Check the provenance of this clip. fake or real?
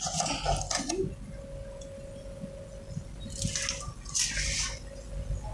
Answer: real